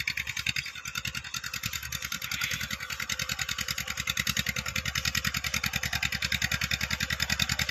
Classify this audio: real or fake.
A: real